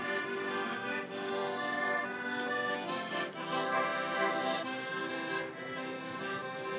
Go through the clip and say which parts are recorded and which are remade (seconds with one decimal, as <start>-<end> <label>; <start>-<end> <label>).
0.0-6.8 recorded